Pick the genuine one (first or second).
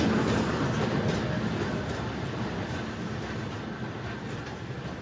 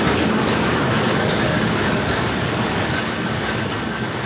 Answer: first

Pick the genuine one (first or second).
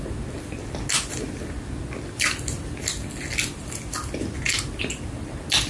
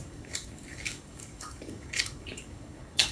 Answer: first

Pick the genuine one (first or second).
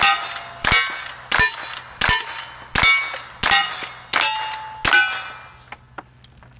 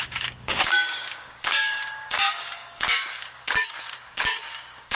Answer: first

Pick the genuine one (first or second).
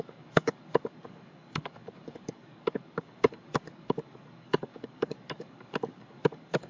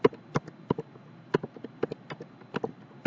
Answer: second